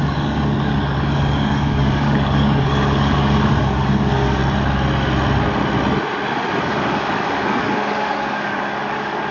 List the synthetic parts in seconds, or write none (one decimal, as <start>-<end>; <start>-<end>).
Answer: 0.0-4.4; 6.6-9.3